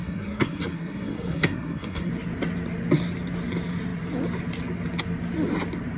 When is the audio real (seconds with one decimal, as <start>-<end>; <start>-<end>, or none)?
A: 2.1-6.0